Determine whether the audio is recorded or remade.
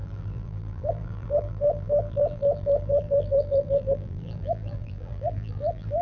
remade